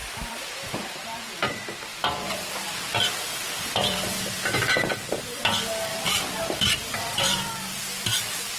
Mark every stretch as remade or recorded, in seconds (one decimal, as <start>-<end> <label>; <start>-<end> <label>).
0.0-1.5 remade; 1.5-1.9 recorded; 1.9-4.9 remade; 4.9-5.9 recorded; 5.9-7.5 remade; 7.5-8.6 recorded